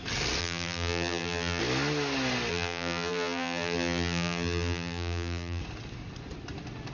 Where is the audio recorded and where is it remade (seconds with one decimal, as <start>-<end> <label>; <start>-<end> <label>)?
0.0-0.4 recorded; 0.4-1.6 remade; 1.6-2.5 recorded; 2.5-5.6 remade; 5.6-6.9 recorded